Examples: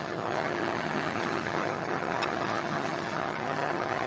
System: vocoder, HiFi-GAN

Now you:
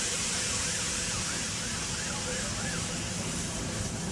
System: none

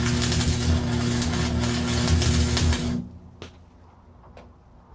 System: none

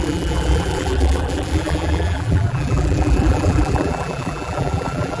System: vocoder, BigVGAN v2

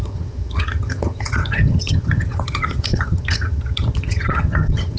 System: vocoder, HiFi-GAN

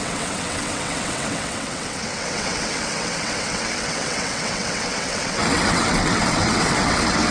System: vocoder, WaveNeXt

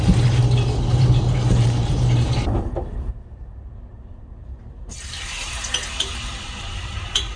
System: vocoder, BigVGAN v2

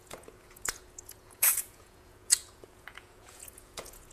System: vocoder, Vocos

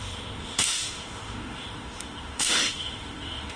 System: autoencoder, DAC-VAE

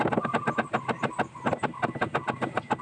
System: none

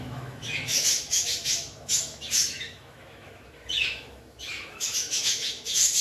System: autoencoder, DAC-VAE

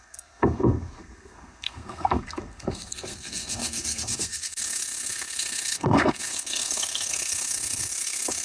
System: codec, SNAC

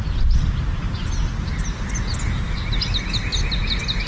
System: none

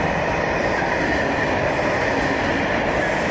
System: none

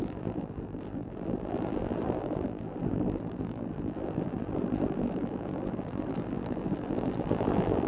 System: vocoder, BigVGAN v2